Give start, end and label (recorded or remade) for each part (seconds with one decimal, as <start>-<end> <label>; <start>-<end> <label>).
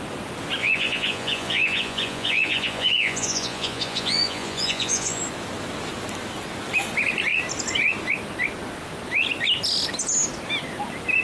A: 0.0-0.6 recorded; 0.6-5.2 remade; 5.2-11.2 recorded